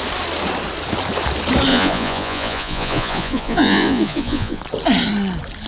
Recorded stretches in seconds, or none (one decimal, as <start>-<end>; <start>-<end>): 0.0-1.7; 4.6-5.7